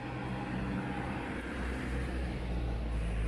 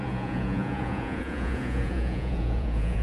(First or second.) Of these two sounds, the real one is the first